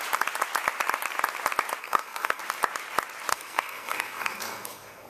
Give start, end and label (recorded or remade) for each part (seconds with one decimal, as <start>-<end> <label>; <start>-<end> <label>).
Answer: 0.0-1.8 recorded; 1.8-2.4 remade; 2.4-3.3 recorded; 3.3-5.1 remade